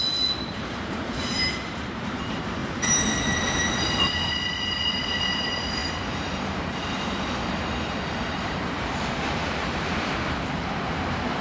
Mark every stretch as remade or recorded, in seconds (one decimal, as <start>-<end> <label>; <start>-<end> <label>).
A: 0.0-2.6 remade; 2.6-3.2 recorded; 3.2-11.4 remade